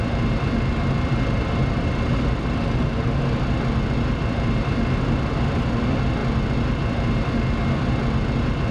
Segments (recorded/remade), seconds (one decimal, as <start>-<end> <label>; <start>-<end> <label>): 0.0-8.7 recorded